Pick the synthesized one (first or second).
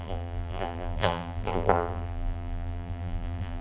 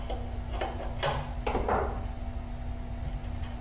first